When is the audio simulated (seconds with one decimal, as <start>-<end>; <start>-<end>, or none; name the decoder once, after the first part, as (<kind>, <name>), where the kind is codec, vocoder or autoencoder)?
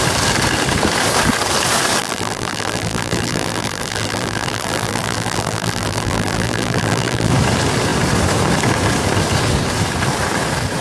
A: 2.0-7.3 (vocoder, BigVGAN v2)